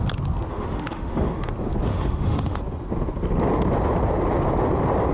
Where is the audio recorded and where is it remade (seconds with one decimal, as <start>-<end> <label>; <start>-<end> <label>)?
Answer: 0.0-0.5 recorded; 0.5-1.5 remade; 1.5-1.9 recorded; 1.9-2.6 remade; 2.6-5.1 recorded